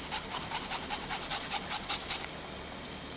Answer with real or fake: real